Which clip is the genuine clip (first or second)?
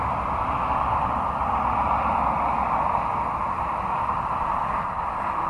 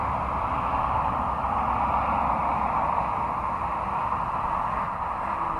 second